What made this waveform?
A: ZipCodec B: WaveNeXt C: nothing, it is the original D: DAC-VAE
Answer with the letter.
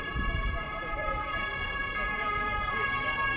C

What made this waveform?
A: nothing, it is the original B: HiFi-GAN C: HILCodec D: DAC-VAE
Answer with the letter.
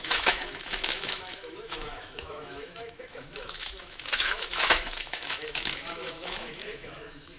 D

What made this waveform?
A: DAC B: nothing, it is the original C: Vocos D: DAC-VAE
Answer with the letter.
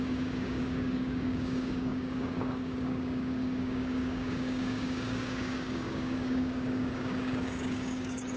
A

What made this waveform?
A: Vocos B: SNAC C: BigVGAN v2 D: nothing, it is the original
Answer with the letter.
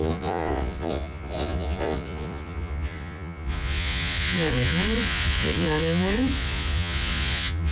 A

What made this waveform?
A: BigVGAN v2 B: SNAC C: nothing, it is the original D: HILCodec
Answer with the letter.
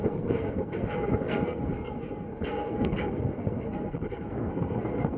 B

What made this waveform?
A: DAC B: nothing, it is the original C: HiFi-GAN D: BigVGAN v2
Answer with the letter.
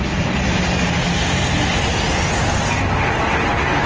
B